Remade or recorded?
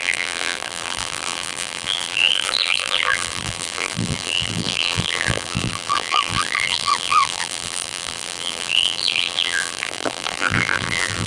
remade